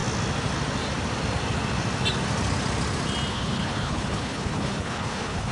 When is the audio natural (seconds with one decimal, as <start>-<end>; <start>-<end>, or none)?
0.0-3.3